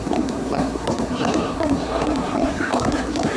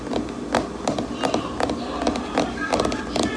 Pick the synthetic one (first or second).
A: first